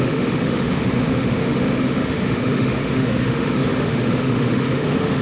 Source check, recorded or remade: remade